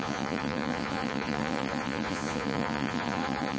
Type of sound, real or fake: fake